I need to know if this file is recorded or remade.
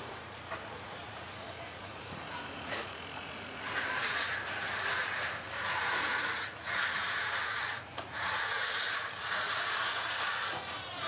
remade